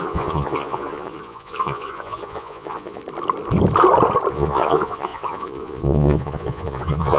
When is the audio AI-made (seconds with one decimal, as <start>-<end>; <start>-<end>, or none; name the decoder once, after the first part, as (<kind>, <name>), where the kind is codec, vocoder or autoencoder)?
0.0-3.0 (vocoder, Vocos); 4.3-7.2